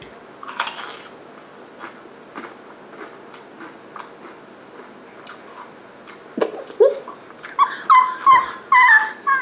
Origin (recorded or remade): recorded